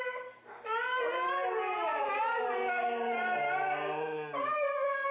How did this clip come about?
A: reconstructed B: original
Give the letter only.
B